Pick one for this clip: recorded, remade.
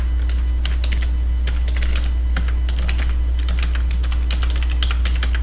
recorded